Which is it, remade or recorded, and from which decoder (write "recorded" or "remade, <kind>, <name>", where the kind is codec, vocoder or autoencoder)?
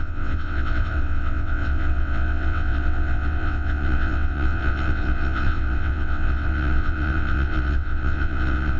remade, vocoder, WaveNeXt